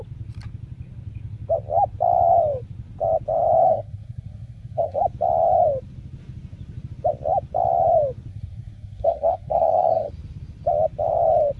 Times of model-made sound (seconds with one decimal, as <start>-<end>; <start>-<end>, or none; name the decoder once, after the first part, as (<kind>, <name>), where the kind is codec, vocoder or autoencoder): 3.6-5.0 (codec, SNAC); 8.3-10.1